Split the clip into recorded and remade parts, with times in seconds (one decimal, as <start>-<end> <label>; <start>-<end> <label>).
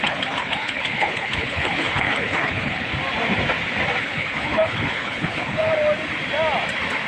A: 0.0-2.9 remade; 2.9-4.0 recorded; 4.0-5.7 remade; 5.7-7.1 recorded